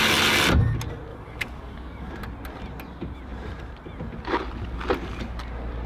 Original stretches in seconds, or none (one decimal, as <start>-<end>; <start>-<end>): 0.0-1.1; 2.1-5.9